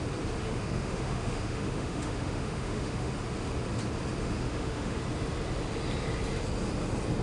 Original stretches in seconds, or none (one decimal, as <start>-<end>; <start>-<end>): 0.0-0.4; 3.1-4.2; 5.0-7.2